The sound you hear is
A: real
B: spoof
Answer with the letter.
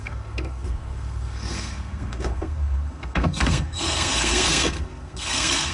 B